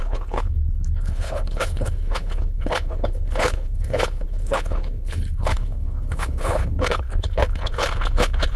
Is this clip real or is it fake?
fake